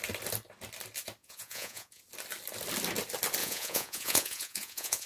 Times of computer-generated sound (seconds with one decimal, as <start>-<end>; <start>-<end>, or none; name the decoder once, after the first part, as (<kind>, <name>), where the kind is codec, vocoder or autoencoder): 1.2-2.0 (vocoder, Vocos); 3.4-5.1